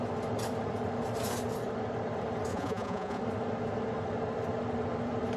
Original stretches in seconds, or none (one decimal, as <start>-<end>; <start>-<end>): 0.0-2.5; 3.2-5.4